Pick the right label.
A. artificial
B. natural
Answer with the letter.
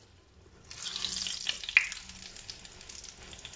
B